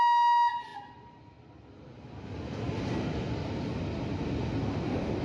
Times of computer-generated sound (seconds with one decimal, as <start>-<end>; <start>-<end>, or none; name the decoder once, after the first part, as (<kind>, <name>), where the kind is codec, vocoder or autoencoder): none